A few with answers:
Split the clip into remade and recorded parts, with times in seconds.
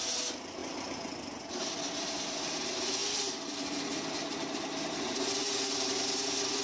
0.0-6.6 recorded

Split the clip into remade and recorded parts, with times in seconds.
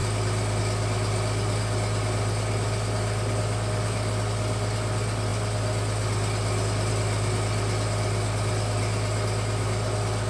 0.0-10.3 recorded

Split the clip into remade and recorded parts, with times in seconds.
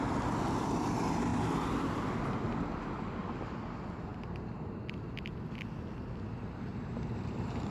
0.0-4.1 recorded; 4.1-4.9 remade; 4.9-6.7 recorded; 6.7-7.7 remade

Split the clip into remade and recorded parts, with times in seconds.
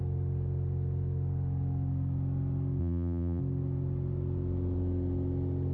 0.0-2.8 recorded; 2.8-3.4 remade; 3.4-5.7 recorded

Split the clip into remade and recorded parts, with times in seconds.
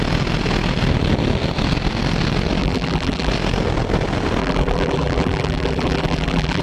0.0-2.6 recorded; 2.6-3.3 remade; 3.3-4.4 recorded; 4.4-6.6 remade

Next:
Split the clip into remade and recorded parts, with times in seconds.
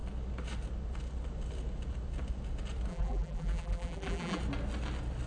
0.0-2.9 recorded; 2.9-4.4 remade; 4.4-5.3 recorded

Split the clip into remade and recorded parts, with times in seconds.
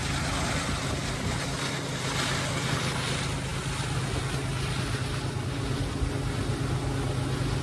0.0-7.6 recorded